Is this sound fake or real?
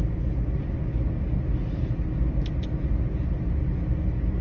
real